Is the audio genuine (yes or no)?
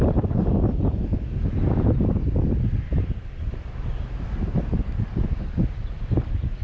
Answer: yes